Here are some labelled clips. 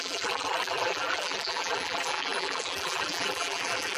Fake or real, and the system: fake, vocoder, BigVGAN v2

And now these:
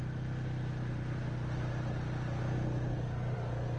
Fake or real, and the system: real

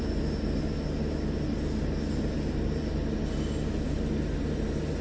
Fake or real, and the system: real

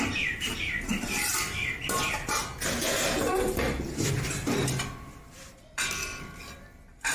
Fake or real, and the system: fake, vocoder, BigVGAN v2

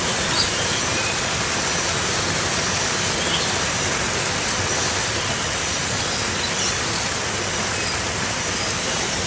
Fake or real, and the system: real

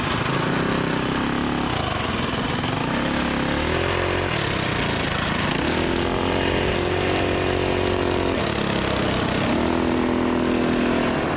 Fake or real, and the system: real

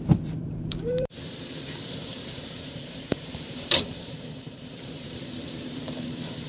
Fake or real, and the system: fake, vocoder, BigVGAN v2